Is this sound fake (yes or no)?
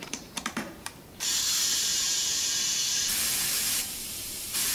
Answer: yes